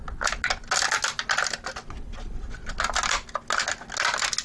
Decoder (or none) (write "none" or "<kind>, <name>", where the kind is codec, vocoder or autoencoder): none